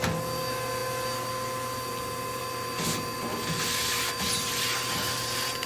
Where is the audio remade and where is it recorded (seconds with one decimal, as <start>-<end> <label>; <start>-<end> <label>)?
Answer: 0.0-5.7 recorded